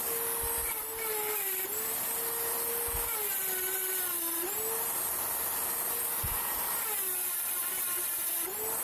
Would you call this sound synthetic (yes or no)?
no